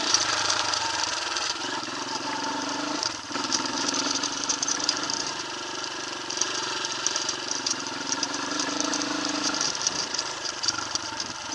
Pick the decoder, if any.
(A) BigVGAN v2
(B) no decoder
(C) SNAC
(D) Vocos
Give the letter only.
A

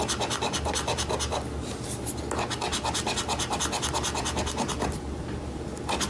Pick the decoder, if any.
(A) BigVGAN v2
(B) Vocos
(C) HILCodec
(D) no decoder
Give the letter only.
D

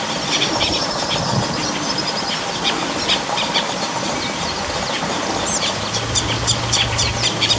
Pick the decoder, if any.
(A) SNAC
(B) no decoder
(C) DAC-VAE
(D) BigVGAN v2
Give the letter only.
D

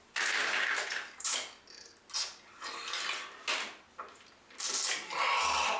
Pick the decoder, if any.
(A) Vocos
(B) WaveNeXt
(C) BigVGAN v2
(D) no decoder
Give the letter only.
D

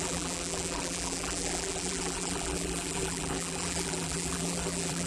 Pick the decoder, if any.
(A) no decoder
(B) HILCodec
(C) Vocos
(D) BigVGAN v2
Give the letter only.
D